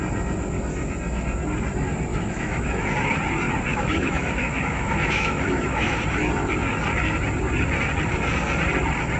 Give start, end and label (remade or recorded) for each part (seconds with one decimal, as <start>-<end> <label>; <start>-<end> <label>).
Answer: 0.0-2.1 recorded; 2.1-2.9 remade; 2.9-3.7 recorded; 3.7-6.0 remade; 6.0-9.2 recorded